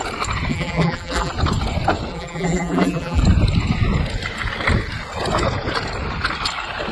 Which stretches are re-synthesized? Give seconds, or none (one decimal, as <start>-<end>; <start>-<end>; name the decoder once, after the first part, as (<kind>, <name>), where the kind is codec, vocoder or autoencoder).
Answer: 0.5-1.3 (vocoder, BigVGAN v2); 2.1-3.2